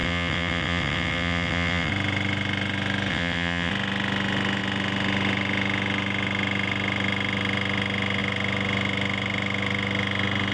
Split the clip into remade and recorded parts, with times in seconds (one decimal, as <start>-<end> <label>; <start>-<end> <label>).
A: 0.0-1.9 remade; 1.9-3.1 recorded; 3.1-3.7 remade; 3.7-10.5 recorded